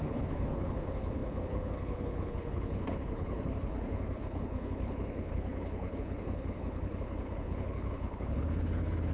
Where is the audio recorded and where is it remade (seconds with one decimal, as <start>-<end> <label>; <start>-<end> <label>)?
0.0-9.1 remade